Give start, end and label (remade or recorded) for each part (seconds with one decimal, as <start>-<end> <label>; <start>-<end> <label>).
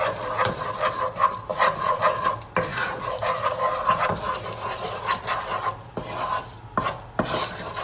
0.0-1.5 recorded; 1.5-2.0 remade; 2.0-2.7 recorded; 2.7-3.6 remade; 3.6-7.8 recorded